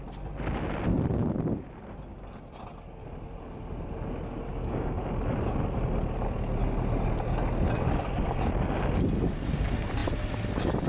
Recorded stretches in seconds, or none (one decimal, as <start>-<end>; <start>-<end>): 0.0-2.1; 2.6-4.5; 5.0-10.9